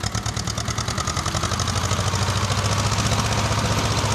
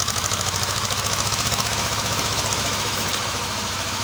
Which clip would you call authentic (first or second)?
first